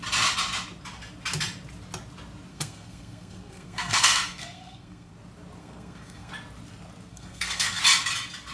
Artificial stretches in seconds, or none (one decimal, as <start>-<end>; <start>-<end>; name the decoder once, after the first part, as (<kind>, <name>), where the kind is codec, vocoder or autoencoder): 2.5-5.1 (codec, SNAC); 5.6-6.3; 7.1-7.8